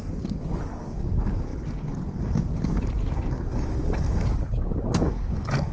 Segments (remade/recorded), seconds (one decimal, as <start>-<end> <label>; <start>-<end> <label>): 0.0-5.7 remade